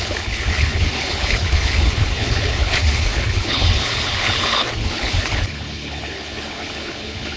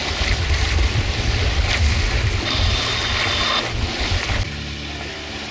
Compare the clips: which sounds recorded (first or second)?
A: second